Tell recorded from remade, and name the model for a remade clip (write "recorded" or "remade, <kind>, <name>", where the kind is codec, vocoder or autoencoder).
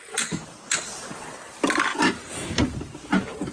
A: recorded